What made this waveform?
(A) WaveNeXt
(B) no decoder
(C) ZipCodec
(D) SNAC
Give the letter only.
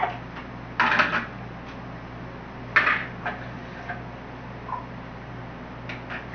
B